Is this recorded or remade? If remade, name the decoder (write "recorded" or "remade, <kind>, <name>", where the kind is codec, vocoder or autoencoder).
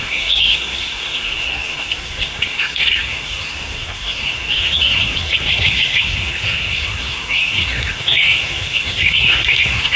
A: remade, codec, SNAC